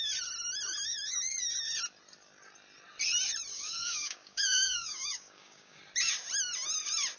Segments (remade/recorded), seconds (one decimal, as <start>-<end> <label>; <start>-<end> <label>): 0.0-3.5 recorded; 3.5-5.8 remade; 5.8-7.2 recorded